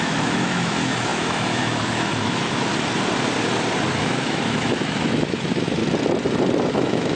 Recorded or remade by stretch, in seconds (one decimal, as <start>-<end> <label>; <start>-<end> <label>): 0.0-2.7 remade; 2.7-3.9 recorded; 3.9-5.8 remade; 5.8-6.7 recorded; 6.7-7.2 remade